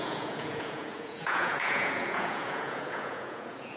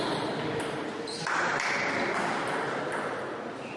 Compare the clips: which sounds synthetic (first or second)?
first